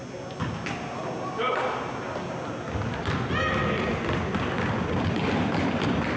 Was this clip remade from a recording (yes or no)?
no